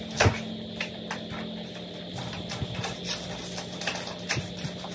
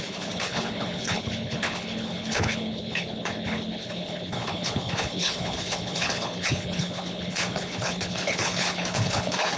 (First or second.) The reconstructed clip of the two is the second